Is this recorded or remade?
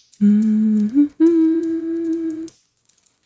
remade